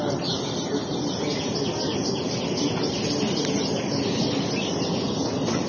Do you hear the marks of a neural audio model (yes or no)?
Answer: no